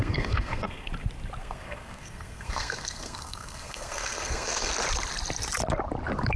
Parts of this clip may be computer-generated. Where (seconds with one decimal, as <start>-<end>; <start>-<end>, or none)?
0.0-0.9; 1.4-4.7